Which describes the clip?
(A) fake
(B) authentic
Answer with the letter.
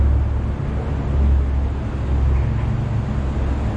B